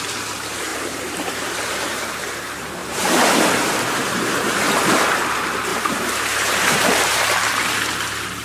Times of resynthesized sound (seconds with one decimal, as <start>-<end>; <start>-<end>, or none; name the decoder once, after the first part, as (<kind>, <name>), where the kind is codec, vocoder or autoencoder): 0.7-1.5 (vocoder, BigVGAN v2); 2.8-5.0; 5.7-7.2